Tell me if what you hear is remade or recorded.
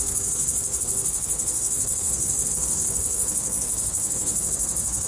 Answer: remade